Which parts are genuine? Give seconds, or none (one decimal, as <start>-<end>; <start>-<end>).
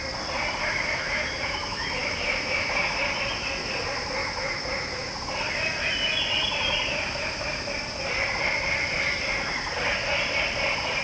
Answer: 0.0-0.6; 3.0-4.2; 5.1-6.9; 7.7-11.0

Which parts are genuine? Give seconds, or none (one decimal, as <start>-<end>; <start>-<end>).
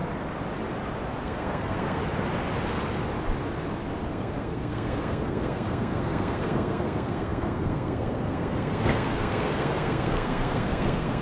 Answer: 0.0-1.2; 2.0-4.1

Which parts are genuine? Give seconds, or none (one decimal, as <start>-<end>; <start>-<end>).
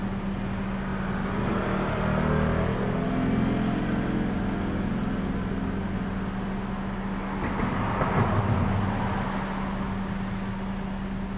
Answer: 0.0-11.4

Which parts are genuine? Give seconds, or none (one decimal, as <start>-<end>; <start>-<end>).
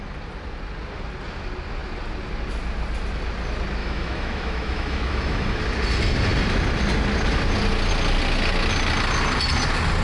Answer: 0.0-3.8; 5.6-10.0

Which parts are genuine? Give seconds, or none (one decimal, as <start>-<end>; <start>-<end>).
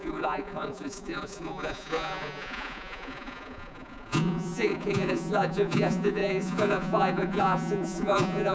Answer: none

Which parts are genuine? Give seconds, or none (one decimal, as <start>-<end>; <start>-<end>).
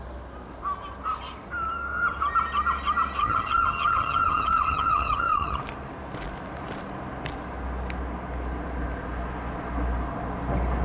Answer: 0.0-3.2; 5.6-10.8